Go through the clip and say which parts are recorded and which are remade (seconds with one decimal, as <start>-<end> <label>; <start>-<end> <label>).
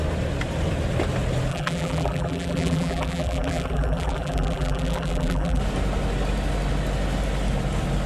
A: 0.0-1.5 recorded; 1.5-5.6 remade; 5.6-8.1 recorded